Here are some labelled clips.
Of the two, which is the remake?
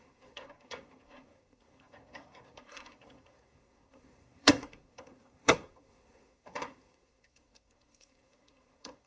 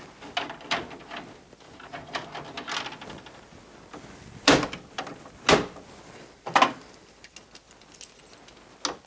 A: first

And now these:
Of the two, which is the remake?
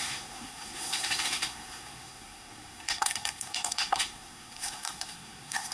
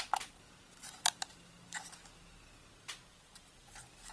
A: first